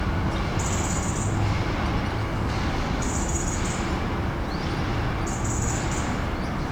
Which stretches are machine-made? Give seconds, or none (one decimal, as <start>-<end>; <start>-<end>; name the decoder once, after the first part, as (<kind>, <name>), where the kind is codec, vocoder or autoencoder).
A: 2.2-3.1 (codec, DAC)